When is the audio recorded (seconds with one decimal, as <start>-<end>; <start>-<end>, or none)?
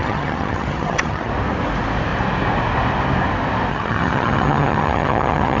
1.3-3.7